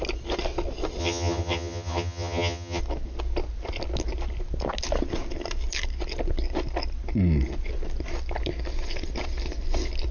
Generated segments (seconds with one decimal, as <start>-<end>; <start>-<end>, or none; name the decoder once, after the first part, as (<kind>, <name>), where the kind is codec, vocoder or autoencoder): 1.0-2.8 (vocoder, HiFi-GAN)